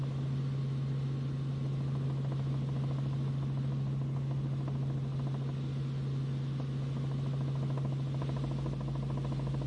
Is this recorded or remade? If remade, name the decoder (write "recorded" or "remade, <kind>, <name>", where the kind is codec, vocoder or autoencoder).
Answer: recorded